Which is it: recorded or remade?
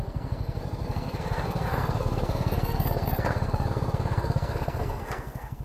remade